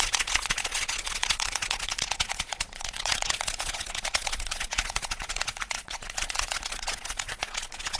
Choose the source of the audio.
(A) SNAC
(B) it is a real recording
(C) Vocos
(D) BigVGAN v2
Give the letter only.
C